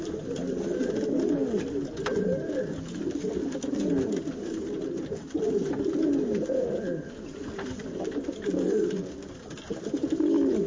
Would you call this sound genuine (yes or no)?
yes